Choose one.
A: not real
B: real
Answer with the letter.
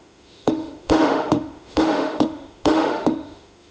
A